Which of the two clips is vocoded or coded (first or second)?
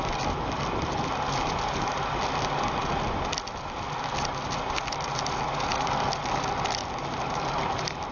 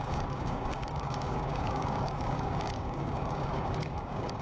second